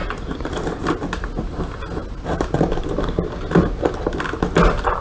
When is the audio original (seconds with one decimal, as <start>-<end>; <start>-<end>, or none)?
0.0-5.0